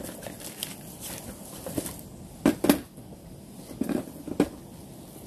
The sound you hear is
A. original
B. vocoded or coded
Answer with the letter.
A